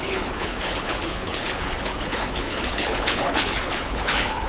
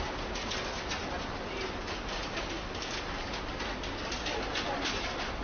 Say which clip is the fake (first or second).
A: first